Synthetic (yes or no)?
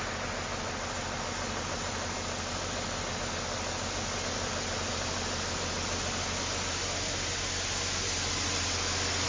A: no